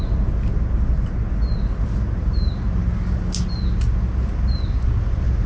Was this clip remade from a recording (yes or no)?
no